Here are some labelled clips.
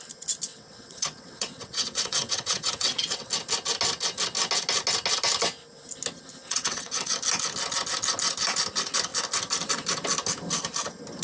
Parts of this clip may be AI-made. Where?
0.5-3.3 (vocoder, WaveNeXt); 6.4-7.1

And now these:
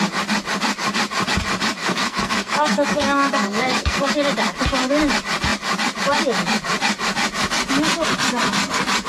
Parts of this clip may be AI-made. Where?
1.8-4.1 (codec, SNAC)